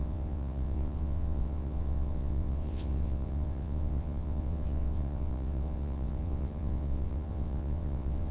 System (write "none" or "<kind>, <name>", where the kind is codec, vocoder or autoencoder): vocoder, WaveNeXt